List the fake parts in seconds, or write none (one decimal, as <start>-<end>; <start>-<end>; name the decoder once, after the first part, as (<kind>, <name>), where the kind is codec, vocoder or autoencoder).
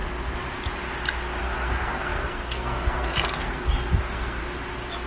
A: 1.4-4.4 (codec, SNAC)